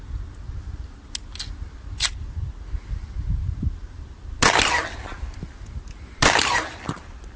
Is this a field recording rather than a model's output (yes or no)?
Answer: yes